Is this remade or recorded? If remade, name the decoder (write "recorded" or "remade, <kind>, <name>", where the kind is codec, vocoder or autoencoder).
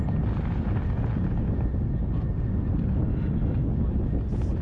recorded